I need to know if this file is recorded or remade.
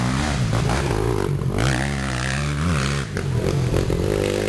recorded